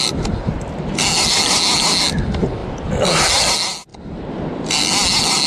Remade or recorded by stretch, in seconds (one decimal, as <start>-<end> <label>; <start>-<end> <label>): 0.0-5.5 recorded